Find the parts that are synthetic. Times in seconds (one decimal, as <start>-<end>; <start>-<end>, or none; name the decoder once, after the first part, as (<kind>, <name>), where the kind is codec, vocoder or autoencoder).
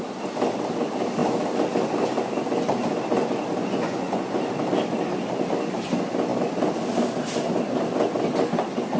3.6-4.4 (vocoder, Vocos)